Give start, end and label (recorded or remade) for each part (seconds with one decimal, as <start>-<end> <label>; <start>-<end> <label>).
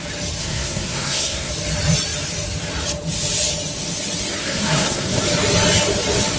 0.0-0.4 recorded; 0.4-1.5 remade; 1.5-4.4 recorded; 4.4-5.2 remade; 5.2-6.4 recorded